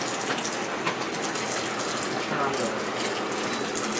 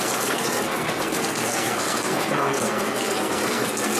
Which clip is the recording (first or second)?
first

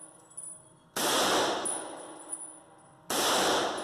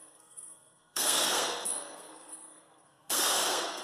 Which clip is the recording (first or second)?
first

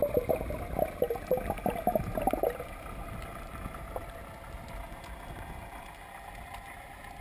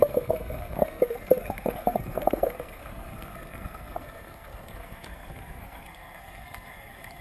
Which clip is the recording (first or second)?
first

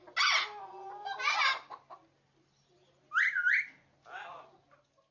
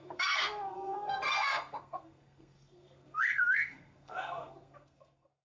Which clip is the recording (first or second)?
first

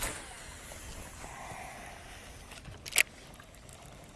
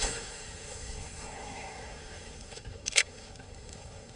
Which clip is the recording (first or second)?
first